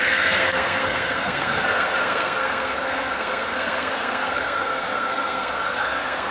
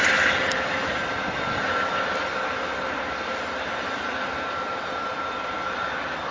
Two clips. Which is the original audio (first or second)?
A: second